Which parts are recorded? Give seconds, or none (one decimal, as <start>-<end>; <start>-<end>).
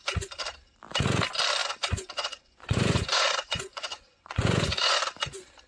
0.0-1.6; 5.0-5.7